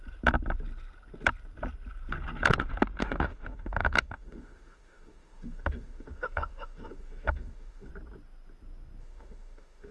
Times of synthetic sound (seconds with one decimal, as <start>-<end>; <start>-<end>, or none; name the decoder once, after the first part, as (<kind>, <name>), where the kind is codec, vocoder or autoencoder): 3.0-7.9 (autoencoder, DAC-VAE); 9.0-9.9